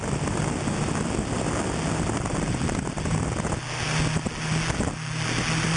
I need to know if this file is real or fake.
real